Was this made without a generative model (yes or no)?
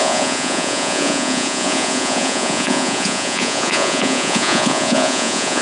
no